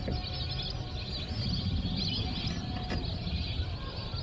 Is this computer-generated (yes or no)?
no